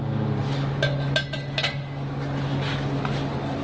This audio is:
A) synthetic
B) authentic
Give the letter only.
B